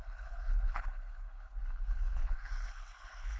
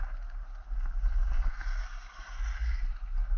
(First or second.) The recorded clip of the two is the second